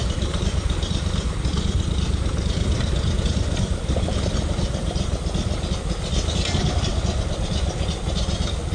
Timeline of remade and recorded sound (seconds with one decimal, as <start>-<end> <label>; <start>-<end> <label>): 0.0-8.7 recorded